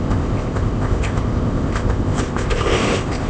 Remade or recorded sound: remade